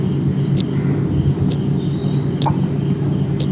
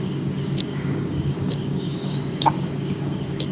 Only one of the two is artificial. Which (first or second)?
second